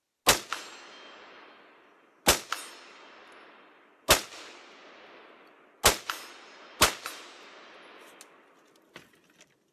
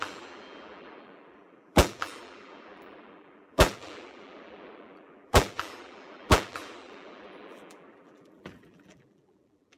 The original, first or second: first